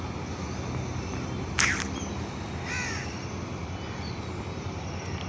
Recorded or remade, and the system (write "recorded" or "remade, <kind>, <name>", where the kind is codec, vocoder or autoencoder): recorded